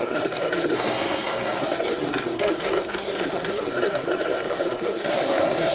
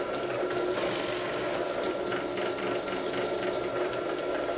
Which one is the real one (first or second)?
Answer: second